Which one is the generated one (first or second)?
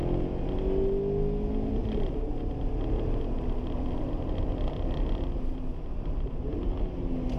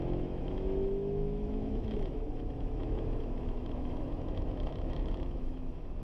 second